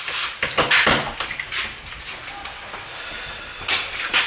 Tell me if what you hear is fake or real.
real